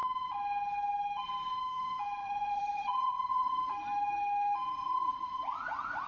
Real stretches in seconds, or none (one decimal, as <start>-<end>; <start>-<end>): 0.0-2.2; 3.6-4.8

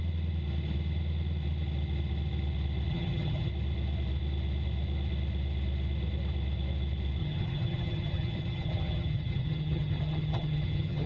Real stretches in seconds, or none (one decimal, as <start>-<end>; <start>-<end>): 0.0-2.9; 3.5-7.2